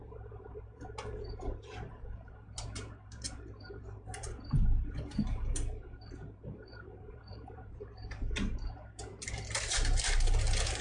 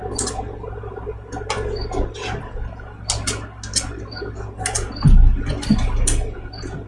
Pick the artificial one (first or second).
first